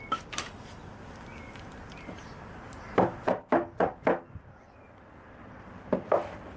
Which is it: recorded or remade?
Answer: recorded